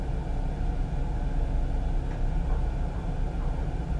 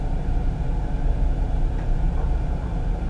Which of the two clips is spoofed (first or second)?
second